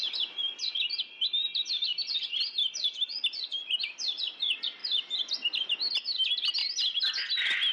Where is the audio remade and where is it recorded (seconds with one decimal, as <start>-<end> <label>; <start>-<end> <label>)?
0.0-1.5 recorded; 1.5-2.5 remade; 2.5-4.8 recorded; 4.8-5.3 remade; 5.3-7.7 recorded